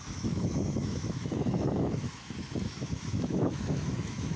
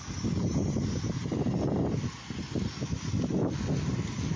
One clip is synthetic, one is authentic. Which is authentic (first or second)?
second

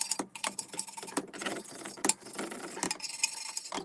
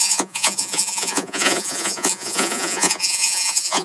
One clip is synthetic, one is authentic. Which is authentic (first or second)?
first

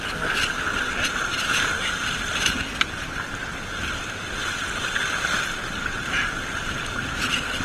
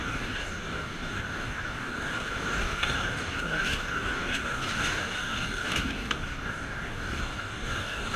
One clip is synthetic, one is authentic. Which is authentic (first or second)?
first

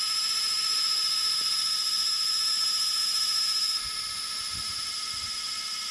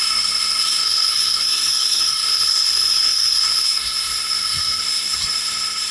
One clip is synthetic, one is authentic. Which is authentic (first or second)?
first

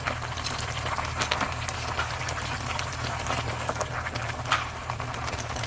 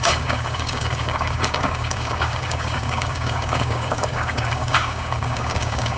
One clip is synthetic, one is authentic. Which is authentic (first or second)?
first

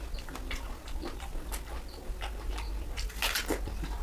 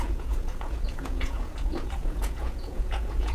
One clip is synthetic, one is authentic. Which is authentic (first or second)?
first